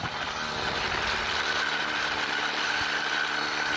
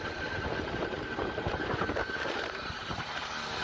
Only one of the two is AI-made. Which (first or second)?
second